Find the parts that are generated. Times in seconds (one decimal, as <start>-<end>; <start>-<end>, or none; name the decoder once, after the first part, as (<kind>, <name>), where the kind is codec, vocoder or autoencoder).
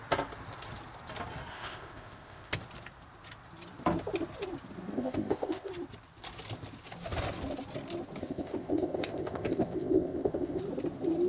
1.5-2.5 (codec, ZipCodec); 4.9-5.7; 8.2-10.6